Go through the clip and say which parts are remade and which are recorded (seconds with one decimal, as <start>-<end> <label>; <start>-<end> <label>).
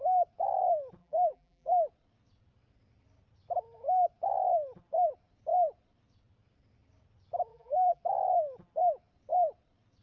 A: 0.0-1.0 recorded; 1.0-1.9 remade; 1.9-7.5 recorded; 7.5-8.0 remade; 8.0-10.0 recorded